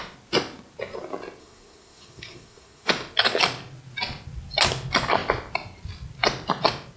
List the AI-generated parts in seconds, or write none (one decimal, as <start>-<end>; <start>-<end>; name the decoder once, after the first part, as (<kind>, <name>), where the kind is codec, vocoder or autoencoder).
1.4-2.9 (codec, SNAC)